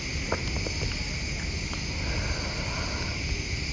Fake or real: real